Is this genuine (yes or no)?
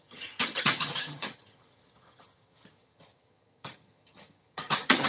no